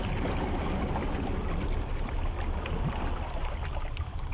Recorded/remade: recorded